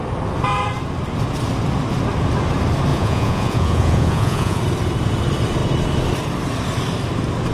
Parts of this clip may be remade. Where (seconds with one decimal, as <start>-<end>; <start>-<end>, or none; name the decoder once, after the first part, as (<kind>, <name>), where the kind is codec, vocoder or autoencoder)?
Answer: 2.9-4.6 (vocoder, Vocos)